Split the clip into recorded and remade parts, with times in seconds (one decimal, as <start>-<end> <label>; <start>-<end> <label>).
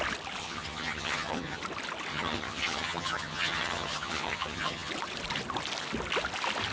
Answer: 0.0-0.4 recorded; 0.4-1.6 remade; 1.6-2.1 recorded; 2.1-4.9 remade; 4.9-6.7 recorded